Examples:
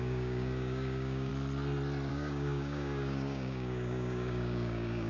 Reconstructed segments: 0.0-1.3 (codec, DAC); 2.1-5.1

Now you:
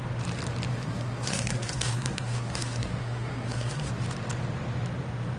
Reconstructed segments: 0.7-3.9 (codec, SNAC)

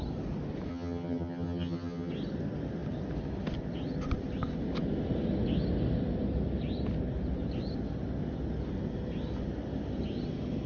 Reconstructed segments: 0.7-2.1 (vocoder, HiFi-GAN)

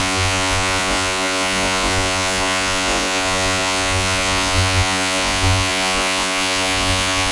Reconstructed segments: 0.0-7.3 (vocoder, Vocos)